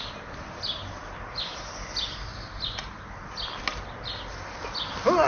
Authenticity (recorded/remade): recorded